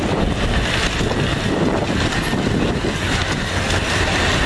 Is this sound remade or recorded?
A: recorded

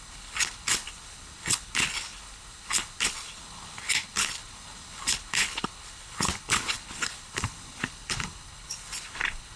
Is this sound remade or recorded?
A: remade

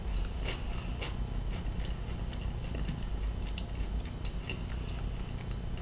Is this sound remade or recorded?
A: recorded